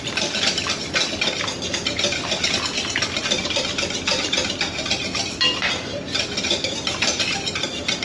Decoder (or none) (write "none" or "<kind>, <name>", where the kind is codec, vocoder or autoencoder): none